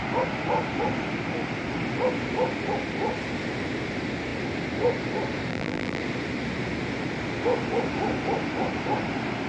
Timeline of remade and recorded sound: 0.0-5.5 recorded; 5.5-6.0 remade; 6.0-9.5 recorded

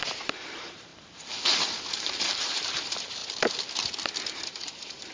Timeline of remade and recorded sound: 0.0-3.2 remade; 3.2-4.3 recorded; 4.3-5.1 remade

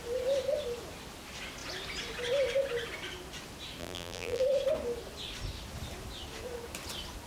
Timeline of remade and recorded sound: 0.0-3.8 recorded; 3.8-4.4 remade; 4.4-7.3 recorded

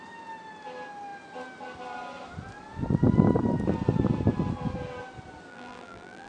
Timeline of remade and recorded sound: 0.0-5.5 recorded; 5.5-6.3 remade